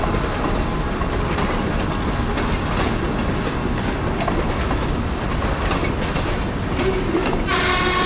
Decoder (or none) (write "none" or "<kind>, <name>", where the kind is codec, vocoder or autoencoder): none